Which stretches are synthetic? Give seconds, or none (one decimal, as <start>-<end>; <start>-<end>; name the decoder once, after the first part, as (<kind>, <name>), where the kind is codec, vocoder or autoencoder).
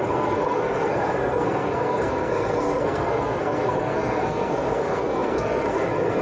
0.0-6.2 (codec, SNAC)